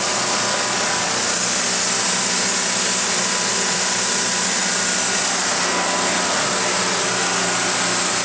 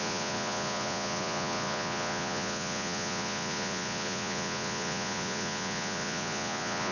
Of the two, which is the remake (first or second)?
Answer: second